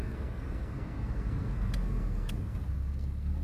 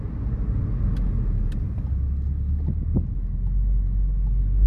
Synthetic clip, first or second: first